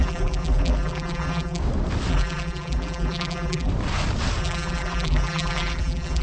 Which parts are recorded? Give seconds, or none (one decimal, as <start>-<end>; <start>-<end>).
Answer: 1.6-2.1; 3.7-4.4